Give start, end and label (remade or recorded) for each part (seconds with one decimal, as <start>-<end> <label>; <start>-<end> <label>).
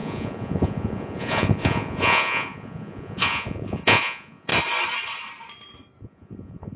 0.0-4.5 remade; 4.5-6.0 recorded; 6.0-6.8 remade